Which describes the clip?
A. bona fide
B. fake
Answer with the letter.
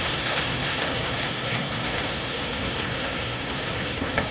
B